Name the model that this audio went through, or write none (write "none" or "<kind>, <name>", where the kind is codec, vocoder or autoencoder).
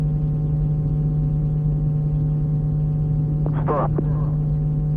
none